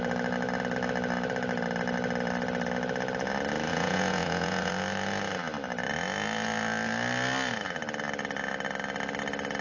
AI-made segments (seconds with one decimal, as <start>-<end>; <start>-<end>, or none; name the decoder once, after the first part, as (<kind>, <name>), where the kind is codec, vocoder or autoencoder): 3.7-4.7 (vocoder, Vocos)

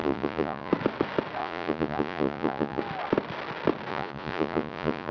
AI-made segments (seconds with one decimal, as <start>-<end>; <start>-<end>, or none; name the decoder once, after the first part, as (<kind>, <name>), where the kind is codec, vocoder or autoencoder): 0.0-0.7 (vocoder, Vocos); 1.4-2.8; 3.9-5.1